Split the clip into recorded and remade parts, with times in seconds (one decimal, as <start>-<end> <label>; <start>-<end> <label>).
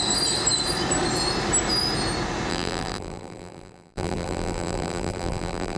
0.0-2.5 recorded; 2.5-5.8 remade